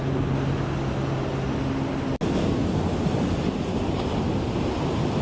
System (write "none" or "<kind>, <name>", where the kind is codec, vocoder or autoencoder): none